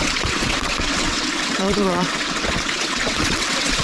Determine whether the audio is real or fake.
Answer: fake